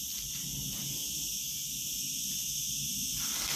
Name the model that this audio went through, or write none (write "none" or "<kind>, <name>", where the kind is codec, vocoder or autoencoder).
none